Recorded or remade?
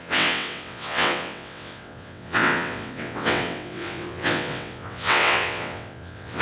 remade